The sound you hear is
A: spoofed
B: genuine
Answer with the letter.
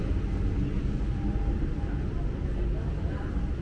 B